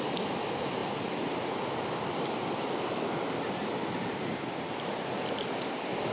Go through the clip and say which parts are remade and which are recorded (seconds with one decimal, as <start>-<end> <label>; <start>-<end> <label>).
0.0-6.1 recorded